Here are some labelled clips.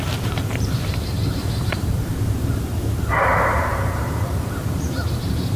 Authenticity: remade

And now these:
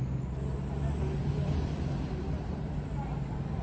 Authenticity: recorded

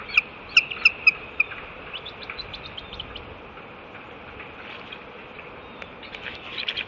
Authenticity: recorded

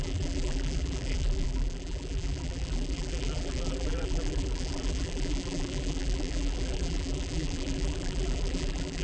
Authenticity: remade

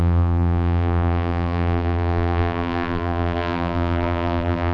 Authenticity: remade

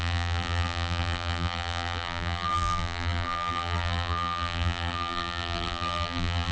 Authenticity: remade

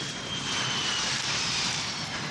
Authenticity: remade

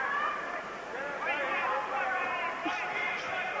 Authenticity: remade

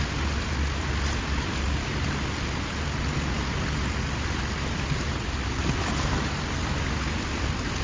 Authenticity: recorded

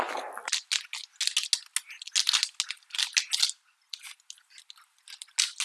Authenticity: recorded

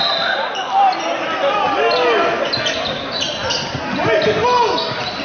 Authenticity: recorded